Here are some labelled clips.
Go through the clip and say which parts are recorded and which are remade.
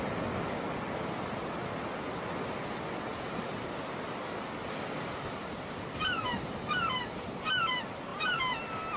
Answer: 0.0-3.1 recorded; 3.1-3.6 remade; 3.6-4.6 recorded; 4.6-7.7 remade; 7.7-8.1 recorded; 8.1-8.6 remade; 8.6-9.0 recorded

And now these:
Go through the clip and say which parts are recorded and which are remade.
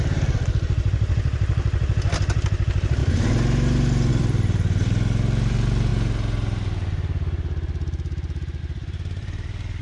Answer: 0.0-5.9 remade; 5.9-8.6 recorded; 8.6-9.8 remade